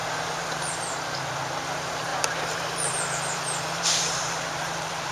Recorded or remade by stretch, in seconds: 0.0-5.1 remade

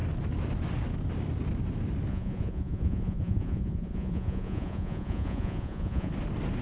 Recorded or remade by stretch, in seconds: 0.0-2.1 recorded; 2.1-6.1 remade; 6.1-6.6 recorded